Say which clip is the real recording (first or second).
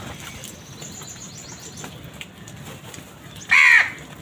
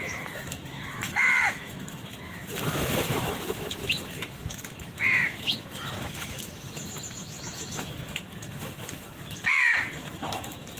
first